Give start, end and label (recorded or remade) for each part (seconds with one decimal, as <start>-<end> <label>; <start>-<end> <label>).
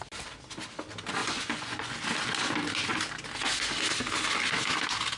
0.0-1.2 recorded; 1.2-2.0 remade; 2.0-5.2 recorded